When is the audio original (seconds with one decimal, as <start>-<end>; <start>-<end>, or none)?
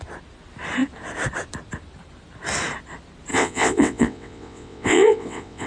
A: 0.0-3.3